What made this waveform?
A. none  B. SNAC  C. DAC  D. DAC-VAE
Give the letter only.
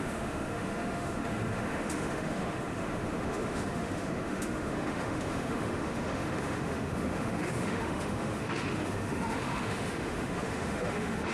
D